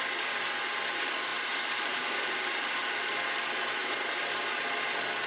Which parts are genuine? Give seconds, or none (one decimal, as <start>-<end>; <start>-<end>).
0.0-1.3; 2.7-3.8; 4.8-5.3

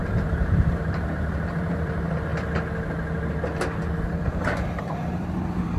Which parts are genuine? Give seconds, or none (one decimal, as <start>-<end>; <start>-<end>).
2.3-4.8

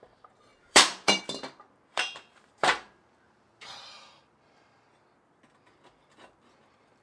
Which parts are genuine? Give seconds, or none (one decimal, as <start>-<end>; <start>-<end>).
0.0-0.5; 1.2-1.9; 4.2-7.0

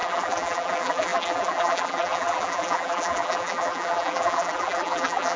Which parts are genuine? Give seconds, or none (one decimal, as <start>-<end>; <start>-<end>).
none